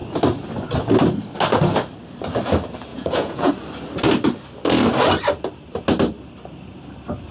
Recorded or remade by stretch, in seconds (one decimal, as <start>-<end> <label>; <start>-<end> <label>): 0.0-2.9 recorded; 2.9-3.5 remade; 3.5-7.3 recorded